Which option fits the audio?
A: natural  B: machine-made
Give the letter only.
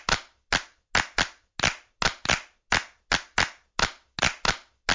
A